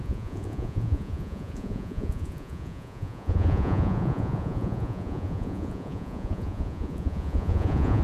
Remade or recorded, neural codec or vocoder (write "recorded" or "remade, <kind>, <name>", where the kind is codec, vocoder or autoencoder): remade, vocoder, Vocos